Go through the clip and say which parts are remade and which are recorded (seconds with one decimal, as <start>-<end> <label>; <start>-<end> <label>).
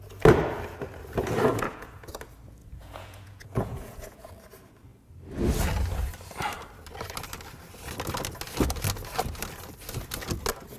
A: 0.0-1.5 recorded; 1.5-2.1 remade; 2.1-2.6 recorded; 2.6-4.3 remade; 4.3-10.8 recorded